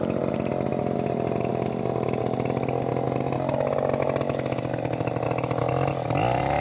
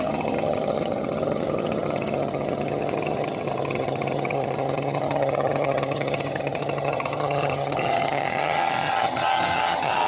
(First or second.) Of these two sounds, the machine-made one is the second